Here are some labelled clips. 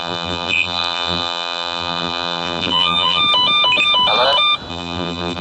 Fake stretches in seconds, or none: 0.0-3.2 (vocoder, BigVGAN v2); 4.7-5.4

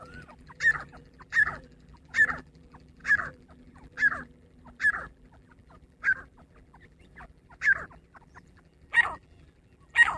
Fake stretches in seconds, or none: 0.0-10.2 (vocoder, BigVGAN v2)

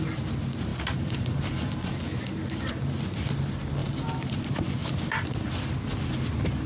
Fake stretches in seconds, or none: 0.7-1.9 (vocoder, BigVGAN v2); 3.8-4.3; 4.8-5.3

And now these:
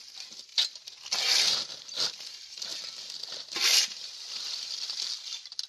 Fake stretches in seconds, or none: none

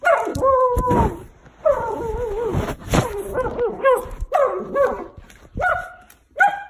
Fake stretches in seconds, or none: none

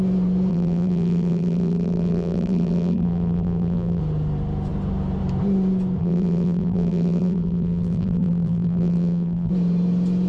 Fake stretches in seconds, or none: 0.5-4.0 (vocoder, BigVGAN v2); 6.0-9.5